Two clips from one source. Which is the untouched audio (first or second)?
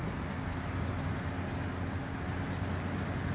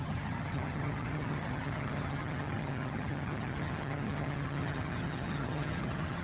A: first